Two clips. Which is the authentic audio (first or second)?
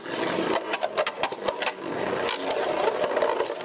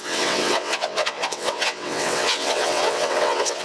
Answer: first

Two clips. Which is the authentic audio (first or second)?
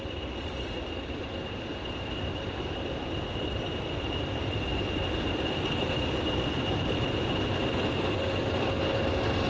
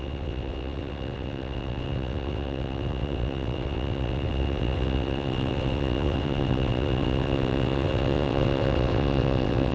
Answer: first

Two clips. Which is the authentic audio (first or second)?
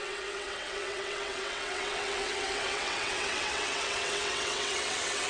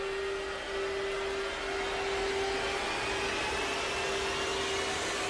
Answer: second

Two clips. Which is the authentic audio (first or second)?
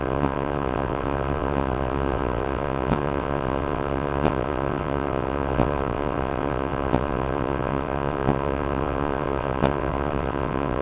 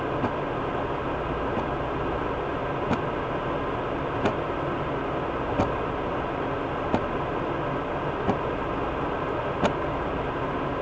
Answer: second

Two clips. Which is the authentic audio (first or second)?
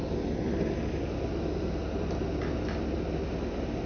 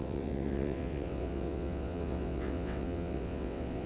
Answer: first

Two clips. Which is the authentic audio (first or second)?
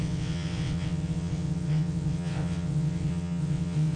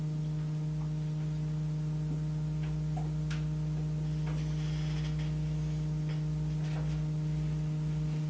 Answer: second